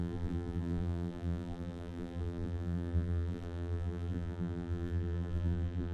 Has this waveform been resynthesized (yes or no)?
yes